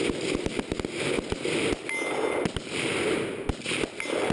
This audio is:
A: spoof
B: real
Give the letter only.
B